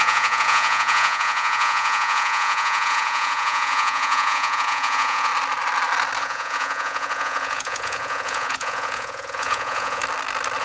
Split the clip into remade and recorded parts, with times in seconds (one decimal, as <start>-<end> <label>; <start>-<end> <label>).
0.0-5.3 remade; 5.3-6.2 recorded; 6.2-10.0 remade; 10.0-10.6 recorded